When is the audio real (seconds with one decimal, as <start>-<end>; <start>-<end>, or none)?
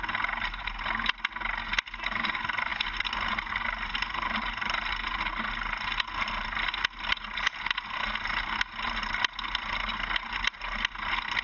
0.0-11.4